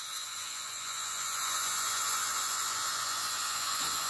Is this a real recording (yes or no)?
no